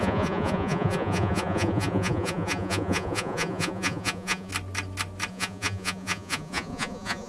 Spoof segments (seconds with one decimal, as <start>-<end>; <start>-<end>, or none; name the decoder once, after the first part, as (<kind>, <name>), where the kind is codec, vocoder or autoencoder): 0.0-4.5 (vocoder, Vocos); 5.3-7.3